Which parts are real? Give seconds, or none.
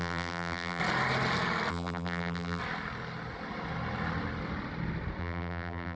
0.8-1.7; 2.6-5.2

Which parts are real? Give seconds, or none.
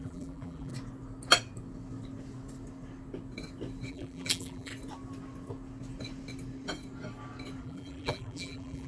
0.7-3.9; 4.7-7.6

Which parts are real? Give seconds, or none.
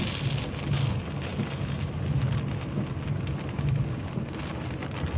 0.0-5.2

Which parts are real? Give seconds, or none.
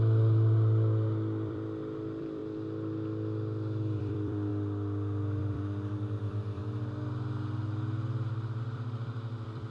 2.4-4.0; 4.5-5.4; 6.6-8.6